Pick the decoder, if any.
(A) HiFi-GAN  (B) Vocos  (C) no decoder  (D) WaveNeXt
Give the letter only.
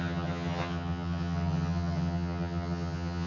A